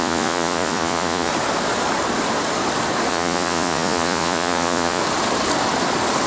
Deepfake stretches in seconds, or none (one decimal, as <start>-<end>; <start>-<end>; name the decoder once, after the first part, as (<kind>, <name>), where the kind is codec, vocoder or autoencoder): 0.0-1.3 (vocoder, Vocos); 3.1-5.0